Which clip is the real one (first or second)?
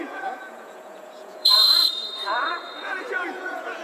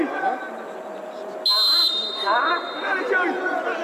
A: second